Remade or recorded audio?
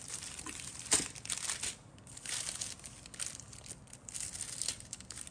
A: recorded